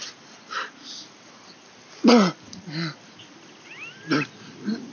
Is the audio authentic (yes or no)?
yes